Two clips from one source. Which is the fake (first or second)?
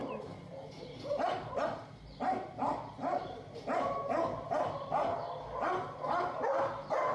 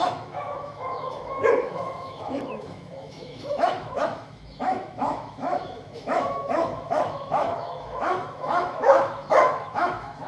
second